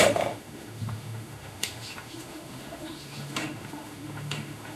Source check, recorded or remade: remade